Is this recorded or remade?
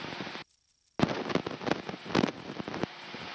recorded